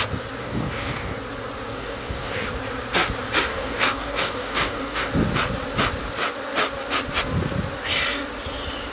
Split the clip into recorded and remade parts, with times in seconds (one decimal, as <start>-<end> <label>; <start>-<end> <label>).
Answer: 0.0-0.4 recorded; 0.4-1.2 remade; 1.2-1.7 recorded; 1.7-2.5 remade; 2.5-3.5 recorded; 3.5-5.1 remade; 5.1-8.9 recorded